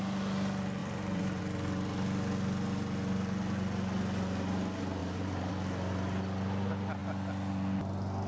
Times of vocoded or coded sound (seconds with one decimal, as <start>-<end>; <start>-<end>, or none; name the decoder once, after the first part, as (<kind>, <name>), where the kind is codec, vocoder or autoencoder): 0.8-1.4 (vocoder, BigVGAN v2); 5.0-5.5